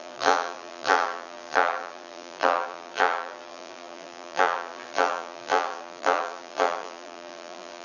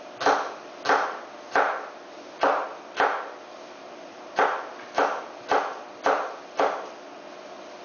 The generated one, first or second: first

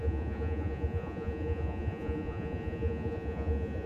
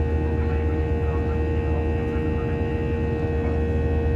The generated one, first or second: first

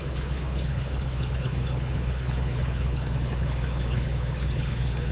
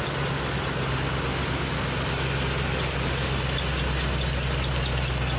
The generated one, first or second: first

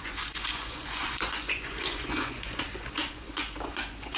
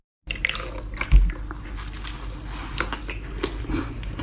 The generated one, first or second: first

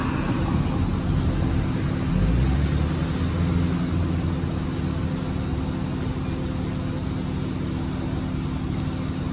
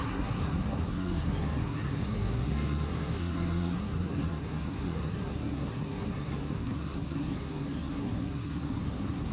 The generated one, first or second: second